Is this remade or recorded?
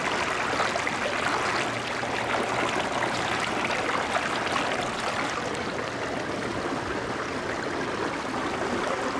recorded